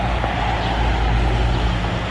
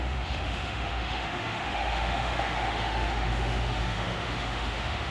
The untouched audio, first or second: first